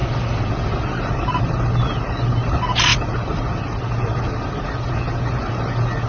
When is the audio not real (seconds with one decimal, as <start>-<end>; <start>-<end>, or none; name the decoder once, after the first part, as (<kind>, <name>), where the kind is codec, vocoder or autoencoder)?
none